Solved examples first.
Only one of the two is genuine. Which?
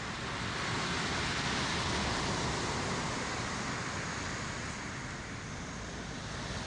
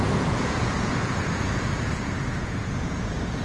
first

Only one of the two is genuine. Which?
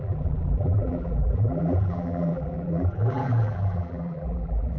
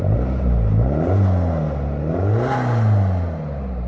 second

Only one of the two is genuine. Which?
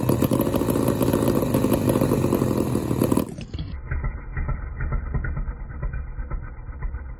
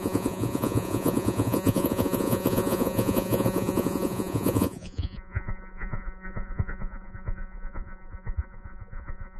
first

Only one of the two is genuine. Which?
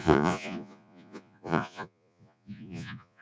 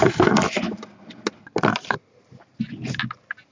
second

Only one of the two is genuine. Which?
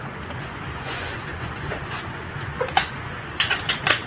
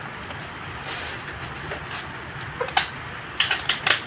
second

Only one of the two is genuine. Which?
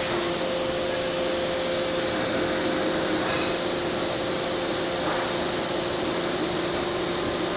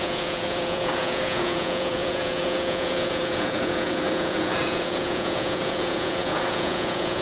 first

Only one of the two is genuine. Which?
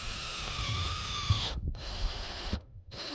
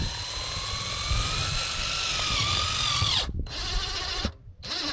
second